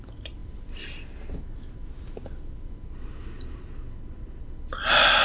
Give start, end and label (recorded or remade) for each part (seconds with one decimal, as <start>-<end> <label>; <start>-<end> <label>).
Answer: 0.0-5.2 recorded